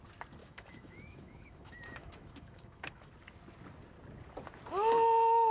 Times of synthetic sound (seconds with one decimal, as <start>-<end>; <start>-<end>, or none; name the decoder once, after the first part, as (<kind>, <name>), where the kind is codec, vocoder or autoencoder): 0.4-3.1 (autoencoder, DAC-VAE)